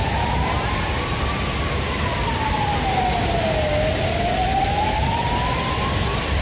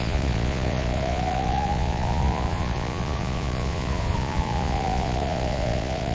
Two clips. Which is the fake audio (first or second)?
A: second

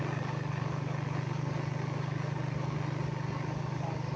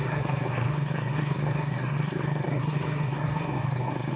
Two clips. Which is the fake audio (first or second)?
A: second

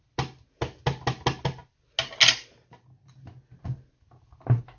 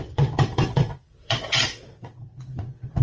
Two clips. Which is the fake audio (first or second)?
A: second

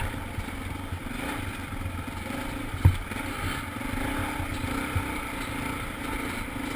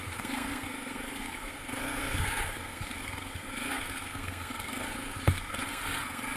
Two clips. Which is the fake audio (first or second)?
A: second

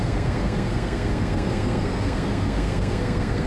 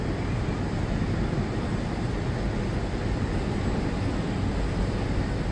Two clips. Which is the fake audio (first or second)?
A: first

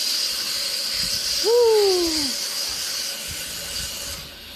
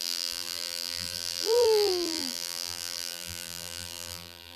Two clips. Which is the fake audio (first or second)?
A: second